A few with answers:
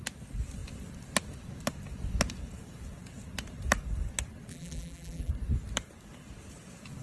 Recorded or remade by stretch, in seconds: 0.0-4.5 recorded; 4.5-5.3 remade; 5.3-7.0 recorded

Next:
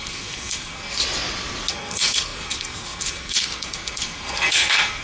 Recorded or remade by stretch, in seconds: 0.0-1.0 remade; 1.0-1.7 recorded; 1.7-5.0 remade

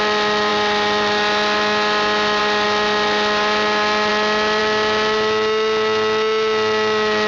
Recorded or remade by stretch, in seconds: 0.0-7.3 recorded